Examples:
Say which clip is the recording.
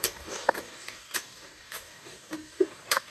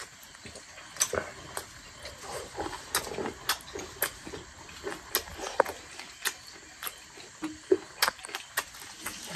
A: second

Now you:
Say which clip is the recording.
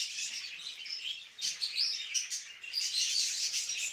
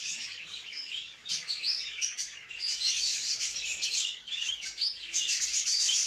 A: first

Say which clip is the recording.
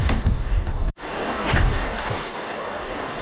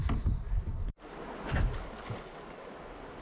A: second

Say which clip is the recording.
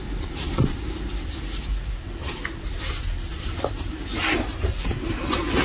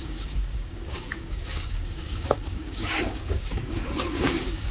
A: first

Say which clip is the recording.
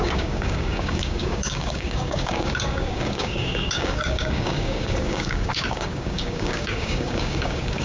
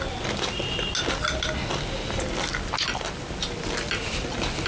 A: second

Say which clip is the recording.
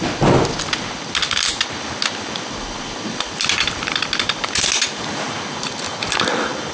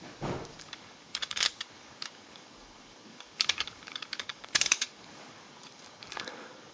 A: first